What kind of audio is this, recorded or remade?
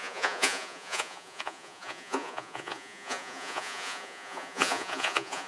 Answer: remade